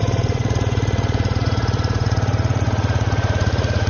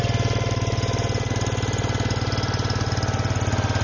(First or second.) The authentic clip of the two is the second